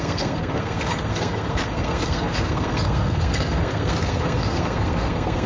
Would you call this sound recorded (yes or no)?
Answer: no